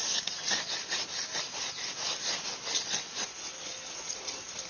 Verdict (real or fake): real